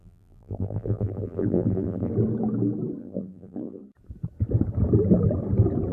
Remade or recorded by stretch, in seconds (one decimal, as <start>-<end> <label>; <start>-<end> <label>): 0.0-2.1 remade; 2.1-3.0 recorded; 3.0-3.8 remade; 3.8-5.9 recorded

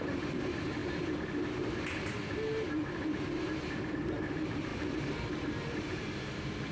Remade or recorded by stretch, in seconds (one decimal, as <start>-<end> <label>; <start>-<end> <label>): 0.0-6.7 remade